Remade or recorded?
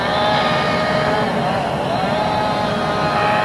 recorded